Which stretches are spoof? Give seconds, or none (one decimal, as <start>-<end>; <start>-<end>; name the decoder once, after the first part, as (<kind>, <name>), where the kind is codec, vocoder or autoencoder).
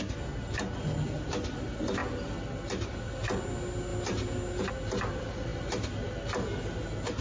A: none